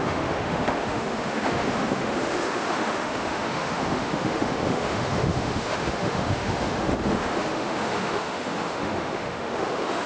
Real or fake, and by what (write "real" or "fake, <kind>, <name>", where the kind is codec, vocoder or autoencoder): fake, autoencoder, DAC-VAE